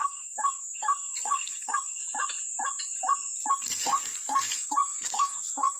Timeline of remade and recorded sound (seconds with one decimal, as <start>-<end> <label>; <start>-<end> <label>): 0.0-2.0 remade; 2.0-3.5 recorded; 3.5-5.8 remade